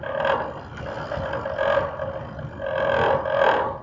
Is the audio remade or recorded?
recorded